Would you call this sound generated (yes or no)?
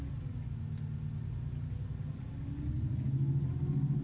no